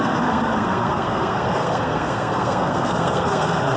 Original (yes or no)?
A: no